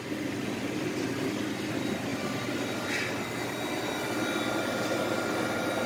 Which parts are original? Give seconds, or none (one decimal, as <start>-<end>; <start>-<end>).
0.0-5.9